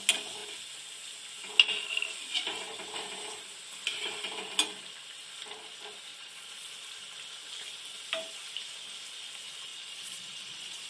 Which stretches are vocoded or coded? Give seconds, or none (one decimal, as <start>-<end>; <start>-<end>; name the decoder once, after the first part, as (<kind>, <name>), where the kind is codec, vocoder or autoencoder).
6.1-6.7 (vocoder, Vocos); 9.7-10.9